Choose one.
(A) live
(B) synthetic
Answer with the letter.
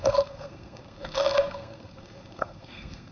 B